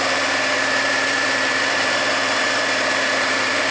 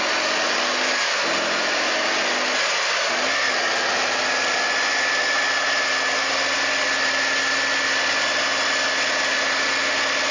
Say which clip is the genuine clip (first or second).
second